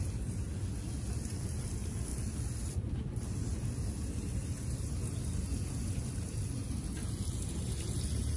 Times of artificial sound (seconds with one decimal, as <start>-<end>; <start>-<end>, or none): none